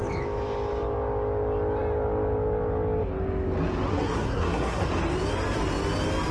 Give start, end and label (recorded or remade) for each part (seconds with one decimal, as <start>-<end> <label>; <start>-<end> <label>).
0.0-3.9 recorded; 3.9-4.9 remade; 4.9-6.3 recorded